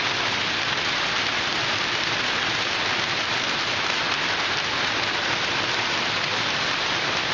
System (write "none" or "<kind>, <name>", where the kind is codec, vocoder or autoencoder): none